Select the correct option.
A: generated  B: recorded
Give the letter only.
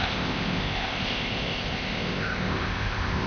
A